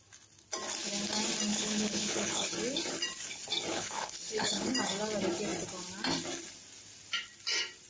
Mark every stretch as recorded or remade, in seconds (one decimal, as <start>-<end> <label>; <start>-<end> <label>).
0.0-1.5 recorded; 1.5-2.5 remade; 2.5-3.7 recorded; 3.7-4.7 remade; 4.7-7.9 recorded